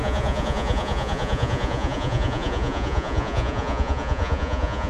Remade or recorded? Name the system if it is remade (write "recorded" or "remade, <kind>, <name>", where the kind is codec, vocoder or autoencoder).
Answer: remade, vocoder, Vocos